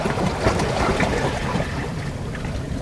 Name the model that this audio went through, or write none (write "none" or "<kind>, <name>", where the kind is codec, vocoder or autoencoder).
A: none